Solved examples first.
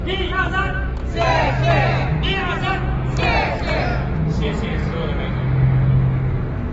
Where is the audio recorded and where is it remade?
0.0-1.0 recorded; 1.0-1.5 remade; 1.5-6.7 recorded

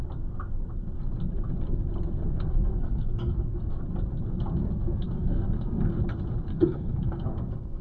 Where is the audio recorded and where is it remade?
0.0-2.3 recorded; 2.3-3.8 remade; 3.8-4.6 recorded; 4.6-5.9 remade; 5.9-6.5 recorded; 6.5-7.8 remade